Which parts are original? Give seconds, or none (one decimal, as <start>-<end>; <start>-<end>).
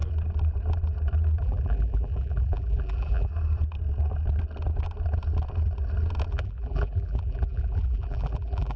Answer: 0.0-1.4; 3.3-6.3